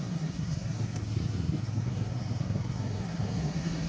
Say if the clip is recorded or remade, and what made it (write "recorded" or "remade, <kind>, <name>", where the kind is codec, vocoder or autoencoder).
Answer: remade, codec, SNAC